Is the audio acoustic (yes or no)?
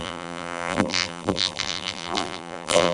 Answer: no